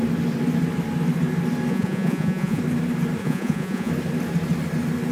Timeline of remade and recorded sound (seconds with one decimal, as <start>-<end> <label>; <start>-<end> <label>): 0.0-1.7 recorded; 1.7-2.6 remade; 2.6-3.2 recorded; 3.2-3.9 remade; 3.9-5.1 recorded